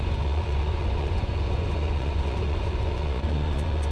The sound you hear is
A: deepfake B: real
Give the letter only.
A